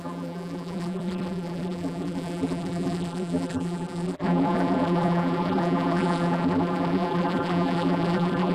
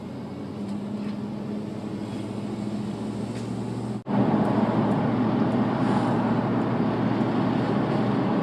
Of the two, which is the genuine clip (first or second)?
second